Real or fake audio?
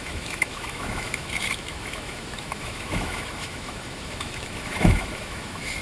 fake